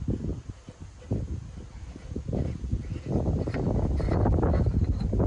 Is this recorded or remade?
recorded